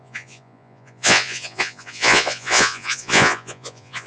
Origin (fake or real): fake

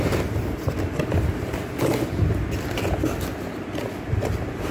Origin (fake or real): real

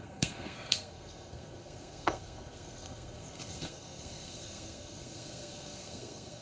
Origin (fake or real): fake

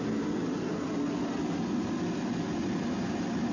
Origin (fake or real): real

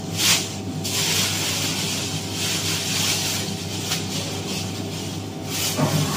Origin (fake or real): real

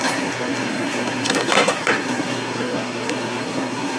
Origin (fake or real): fake